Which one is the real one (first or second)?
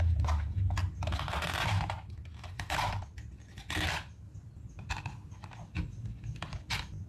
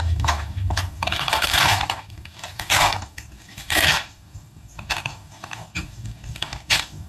first